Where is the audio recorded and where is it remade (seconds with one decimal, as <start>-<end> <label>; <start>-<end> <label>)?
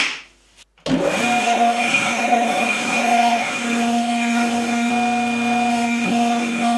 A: 0.0-1.4 recorded; 1.4-4.9 remade; 4.9-5.7 recorded; 5.7-6.8 remade